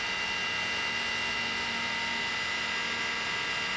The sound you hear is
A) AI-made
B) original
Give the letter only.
B